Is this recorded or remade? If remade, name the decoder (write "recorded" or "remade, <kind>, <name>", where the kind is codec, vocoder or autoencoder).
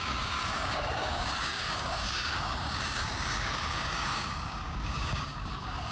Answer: remade, codec, DAC